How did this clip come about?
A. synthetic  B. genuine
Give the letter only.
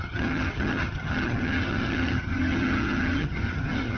A